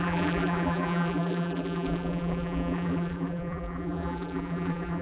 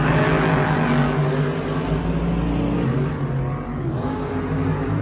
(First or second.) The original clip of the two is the second